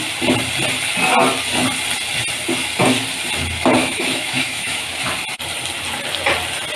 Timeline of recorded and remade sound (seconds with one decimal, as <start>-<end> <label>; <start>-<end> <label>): 0.0-3.8 recorded; 3.8-4.9 remade; 4.9-6.8 recorded

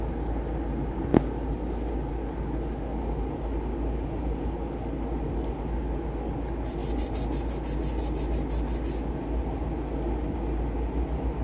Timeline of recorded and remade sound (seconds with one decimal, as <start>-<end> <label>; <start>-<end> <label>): 0.0-11.4 recorded

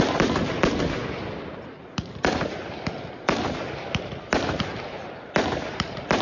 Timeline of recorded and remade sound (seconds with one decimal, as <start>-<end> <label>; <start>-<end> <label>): 0.0-6.2 recorded

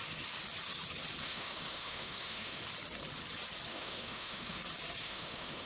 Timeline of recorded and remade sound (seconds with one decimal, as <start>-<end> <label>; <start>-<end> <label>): 0.0-1.2 recorded; 1.2-2.6 remade; 2.6-3.7 recorded; 3.7-4.6 remade; 4.6-5.0 recorded; 5.0-5.7 remade

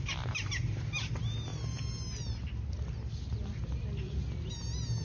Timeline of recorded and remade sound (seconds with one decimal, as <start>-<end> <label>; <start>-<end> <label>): 0.0-5.0 recorded

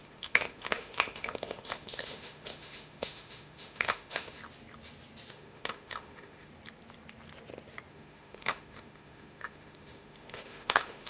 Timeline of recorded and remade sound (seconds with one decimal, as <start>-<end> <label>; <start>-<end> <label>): 0.0-4.4 remade; 4.4-5.3 recorded; 5.3-6.5 remade; 6.5-7.9 recorded; 7.9-11.1 remade